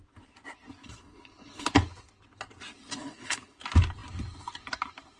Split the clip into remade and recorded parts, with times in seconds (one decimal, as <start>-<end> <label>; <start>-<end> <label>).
0.0-0.8 recorded; 0.8-1.7 remade; 1.7-3.0 recorded; 3.0-3.6 remade; 3.6-5.2 recorded